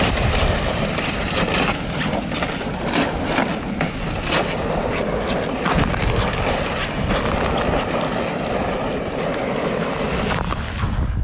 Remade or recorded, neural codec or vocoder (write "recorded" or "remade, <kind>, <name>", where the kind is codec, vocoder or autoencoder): recorded